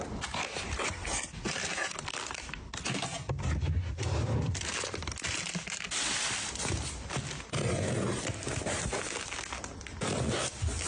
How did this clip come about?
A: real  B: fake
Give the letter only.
A